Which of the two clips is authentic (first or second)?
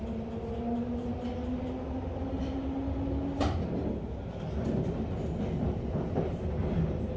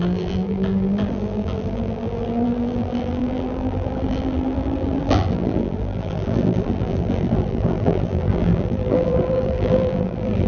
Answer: first